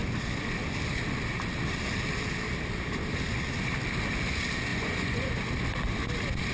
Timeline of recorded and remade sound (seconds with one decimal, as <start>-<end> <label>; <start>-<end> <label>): 0.0-4.7 recorded; 4.7-5.3 remade; 5.3-6.5 recorded